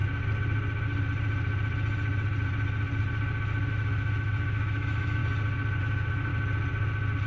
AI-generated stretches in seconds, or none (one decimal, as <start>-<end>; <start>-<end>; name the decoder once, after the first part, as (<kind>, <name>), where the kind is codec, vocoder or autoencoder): 3.7-5.2 (autoencoder, DAC-VAE); 5.8-6.3